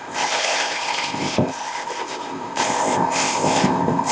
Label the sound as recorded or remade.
remade